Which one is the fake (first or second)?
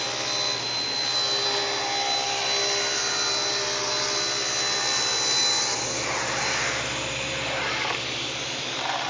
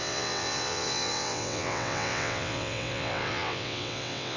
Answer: second